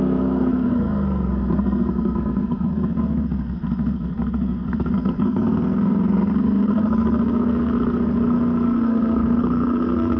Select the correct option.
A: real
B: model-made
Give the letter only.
B